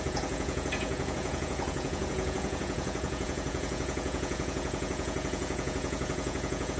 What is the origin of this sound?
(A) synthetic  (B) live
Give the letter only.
A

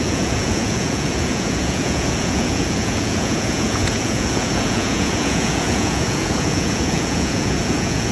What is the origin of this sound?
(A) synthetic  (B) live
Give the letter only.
A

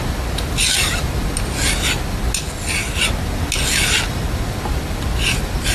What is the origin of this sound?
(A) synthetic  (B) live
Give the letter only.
B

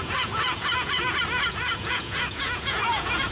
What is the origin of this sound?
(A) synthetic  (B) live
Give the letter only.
A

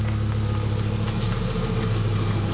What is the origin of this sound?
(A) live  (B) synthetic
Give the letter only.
A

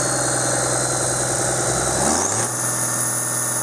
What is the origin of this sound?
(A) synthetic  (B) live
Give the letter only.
B